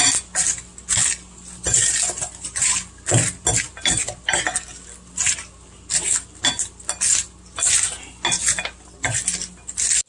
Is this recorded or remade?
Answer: recorded